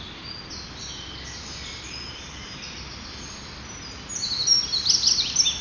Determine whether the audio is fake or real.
real